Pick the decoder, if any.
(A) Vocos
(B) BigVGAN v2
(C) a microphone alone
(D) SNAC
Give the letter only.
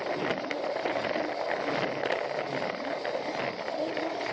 C